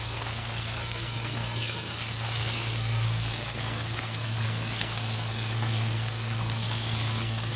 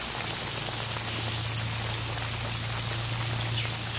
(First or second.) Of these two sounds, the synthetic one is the first